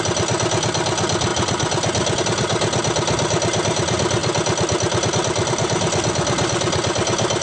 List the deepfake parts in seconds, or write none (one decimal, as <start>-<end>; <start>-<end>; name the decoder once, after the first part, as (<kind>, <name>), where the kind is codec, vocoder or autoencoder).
none